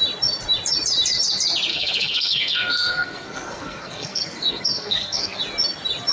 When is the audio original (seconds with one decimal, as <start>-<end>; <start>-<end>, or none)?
0.0-1.7; 5.4-6.1